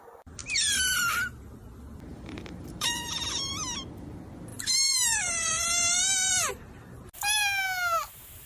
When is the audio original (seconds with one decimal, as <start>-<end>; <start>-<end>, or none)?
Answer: 0.0-2.1; 3.5-4.5; 6.5-8.5